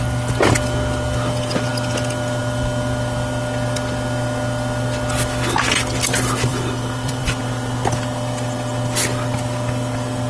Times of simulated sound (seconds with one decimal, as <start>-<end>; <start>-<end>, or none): 6.5-7.4